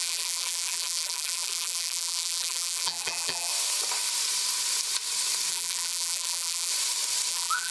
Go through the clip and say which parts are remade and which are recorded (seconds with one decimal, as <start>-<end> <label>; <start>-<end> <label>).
0.0-3.5 remade; 3.5-5.5 recorded; 5.5-6.7 remade; 6.7-7.3 recorded; 7.3-7.7 remade